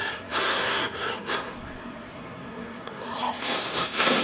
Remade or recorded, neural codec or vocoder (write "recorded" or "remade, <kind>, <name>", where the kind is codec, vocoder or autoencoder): remade, codec, SNAC